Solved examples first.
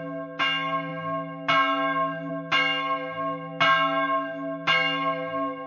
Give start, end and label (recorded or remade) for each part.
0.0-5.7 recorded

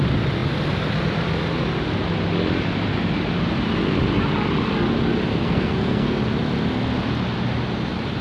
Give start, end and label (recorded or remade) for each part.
0.0-5.3 recorded; 5.3-6.2 remade; 6.2-8.2 recorded

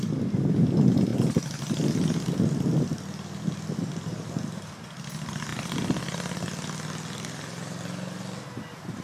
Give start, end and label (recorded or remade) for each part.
0.0-9.0 recorded

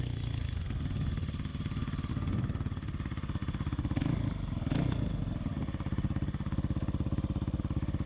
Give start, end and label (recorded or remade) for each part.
0.0-8.1 recorded

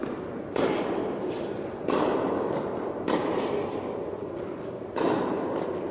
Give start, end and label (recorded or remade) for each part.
0.0-4.2 recorded; 4.2-4.8 remade; 4.8-5.9 recorded